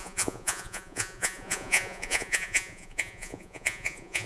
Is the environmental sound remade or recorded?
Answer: remade